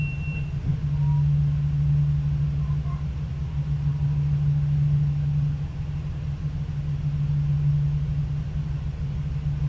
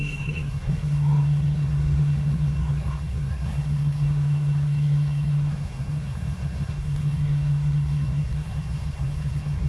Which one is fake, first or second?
second